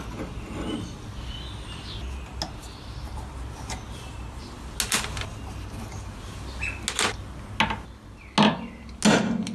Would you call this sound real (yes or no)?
yes